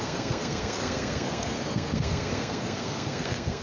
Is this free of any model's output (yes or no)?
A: no